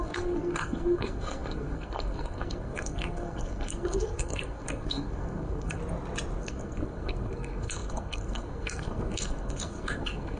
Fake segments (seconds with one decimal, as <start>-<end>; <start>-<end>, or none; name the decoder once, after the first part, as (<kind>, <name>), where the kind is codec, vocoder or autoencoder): 0.0-5.8 (codec, SNAC); 6.4-10.4